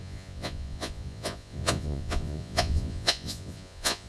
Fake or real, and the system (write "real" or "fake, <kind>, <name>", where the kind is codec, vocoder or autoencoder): fake, vocoder, Vocos